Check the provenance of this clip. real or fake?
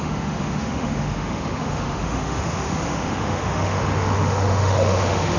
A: fake